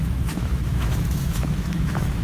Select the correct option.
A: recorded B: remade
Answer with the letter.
B